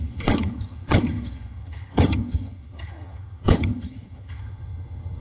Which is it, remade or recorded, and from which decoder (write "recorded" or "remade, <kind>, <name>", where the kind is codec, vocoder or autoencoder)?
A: remade, vocoder, HiFi-GAN